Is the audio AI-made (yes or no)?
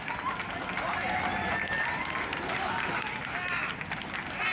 no